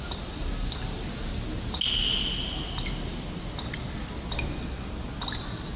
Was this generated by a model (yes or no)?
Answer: no